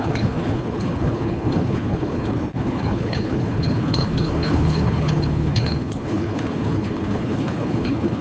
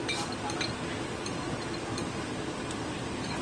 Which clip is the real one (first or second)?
second